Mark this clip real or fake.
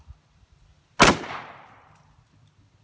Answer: real